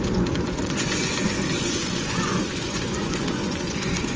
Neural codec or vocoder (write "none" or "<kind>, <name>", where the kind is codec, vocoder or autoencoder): vocoder, Vocos